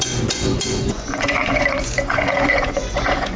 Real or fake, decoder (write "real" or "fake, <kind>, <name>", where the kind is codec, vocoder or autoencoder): fake, vocoder, Vocos